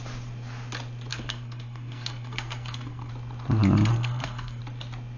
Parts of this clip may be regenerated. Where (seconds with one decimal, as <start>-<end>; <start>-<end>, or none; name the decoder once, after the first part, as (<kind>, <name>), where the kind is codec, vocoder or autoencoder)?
1.1-3.1 (codec, SNAC); 3.9-4.6